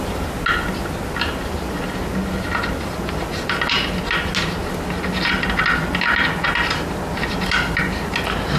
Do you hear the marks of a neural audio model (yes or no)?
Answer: no